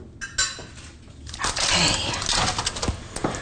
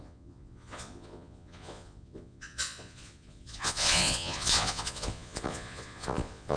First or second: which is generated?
second